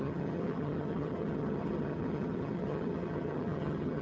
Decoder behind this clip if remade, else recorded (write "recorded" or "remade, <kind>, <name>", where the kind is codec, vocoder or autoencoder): remade, vocoder, HiFi-GAN